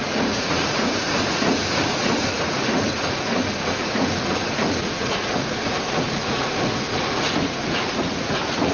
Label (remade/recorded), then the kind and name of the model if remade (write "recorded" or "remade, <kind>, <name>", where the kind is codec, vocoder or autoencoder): remade, vocoder, Vocos